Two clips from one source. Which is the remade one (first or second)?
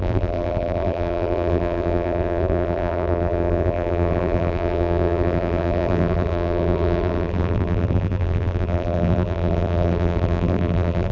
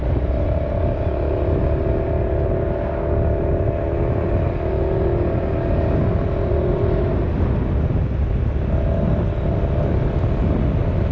first